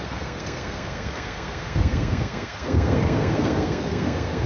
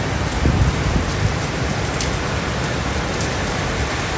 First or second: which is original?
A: second